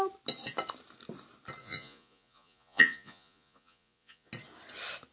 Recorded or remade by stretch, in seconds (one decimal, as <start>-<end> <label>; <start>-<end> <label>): 0.0-1.6 recorded; 1.6-4.3 remade; 4.3-5.1 recorded